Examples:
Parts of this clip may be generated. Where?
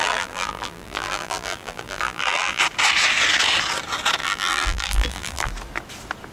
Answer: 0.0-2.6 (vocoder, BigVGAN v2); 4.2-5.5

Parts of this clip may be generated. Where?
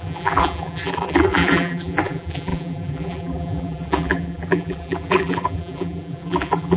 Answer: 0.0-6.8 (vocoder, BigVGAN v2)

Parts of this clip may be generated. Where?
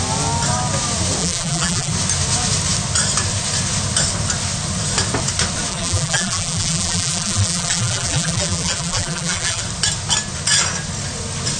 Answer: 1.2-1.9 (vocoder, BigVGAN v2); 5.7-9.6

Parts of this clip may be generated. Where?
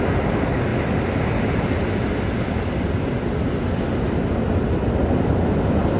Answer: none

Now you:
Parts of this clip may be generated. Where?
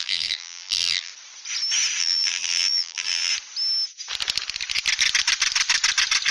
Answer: 0.0-1.1 (vocoder, BigVGAN v2); 2.0-3.3